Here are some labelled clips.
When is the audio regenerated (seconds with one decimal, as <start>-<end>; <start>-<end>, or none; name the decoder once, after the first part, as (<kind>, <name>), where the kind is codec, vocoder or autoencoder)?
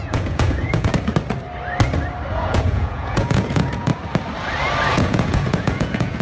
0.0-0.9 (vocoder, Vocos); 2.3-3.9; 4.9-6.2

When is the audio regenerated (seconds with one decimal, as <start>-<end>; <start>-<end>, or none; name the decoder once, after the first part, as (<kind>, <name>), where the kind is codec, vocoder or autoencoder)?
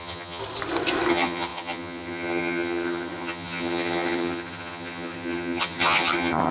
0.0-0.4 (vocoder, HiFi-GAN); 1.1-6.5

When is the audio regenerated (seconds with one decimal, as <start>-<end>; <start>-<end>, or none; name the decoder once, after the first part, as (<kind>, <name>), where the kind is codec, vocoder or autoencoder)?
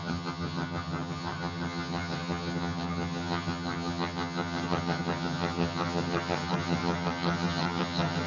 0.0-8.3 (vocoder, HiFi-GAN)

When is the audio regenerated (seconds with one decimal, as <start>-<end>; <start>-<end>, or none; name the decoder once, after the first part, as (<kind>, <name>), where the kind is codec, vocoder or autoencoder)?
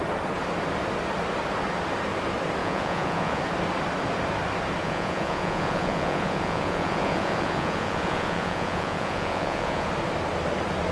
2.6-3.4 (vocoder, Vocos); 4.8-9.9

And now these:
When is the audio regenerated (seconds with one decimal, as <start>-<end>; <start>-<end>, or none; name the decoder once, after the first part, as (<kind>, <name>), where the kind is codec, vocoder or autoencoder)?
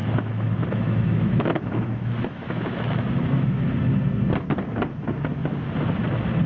0.0-3.6 (autoencoder, DAC-VAE)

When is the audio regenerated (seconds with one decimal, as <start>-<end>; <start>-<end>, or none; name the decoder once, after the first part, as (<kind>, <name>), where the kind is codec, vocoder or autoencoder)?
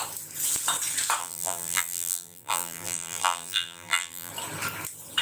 1.2-4.3 (vocoder, BigVGAN v2)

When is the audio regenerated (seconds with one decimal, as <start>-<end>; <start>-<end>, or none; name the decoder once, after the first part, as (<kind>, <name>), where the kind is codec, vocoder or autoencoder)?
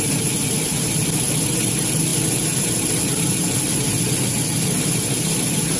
none